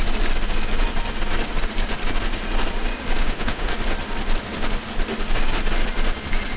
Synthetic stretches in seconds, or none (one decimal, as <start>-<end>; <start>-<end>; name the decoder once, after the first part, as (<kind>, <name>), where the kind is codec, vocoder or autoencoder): 3.2-3.7 (autoencoder, DAC-VAE)